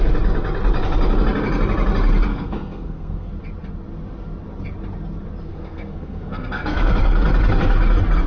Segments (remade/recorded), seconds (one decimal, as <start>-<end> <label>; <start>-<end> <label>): 0.0-2.3 recorded; 2.3-3.3 remade; 3.3-5.5 recorded; 5.5-6.9 remade; 6.9-8.3 recorded